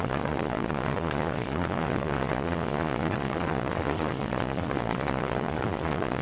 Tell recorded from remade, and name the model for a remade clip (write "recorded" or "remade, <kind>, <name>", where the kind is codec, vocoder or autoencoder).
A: remade, vocoder, Vocos